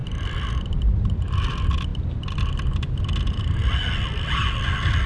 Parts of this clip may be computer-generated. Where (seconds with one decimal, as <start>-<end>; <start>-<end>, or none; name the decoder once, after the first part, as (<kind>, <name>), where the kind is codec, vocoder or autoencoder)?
none